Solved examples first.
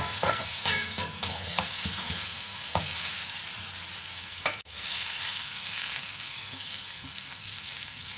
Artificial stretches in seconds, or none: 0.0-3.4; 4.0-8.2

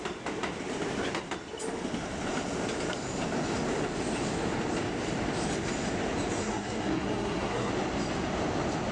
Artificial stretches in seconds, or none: 6.4-7.7

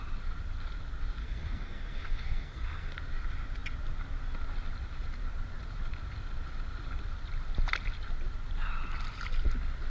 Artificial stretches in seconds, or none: 1.2-2.9

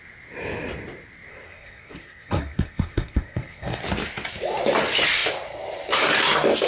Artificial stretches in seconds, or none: 1.3-3.8